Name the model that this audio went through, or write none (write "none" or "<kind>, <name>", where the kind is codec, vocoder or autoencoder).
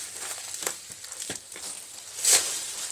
none